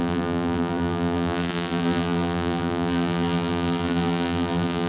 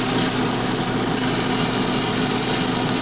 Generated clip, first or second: first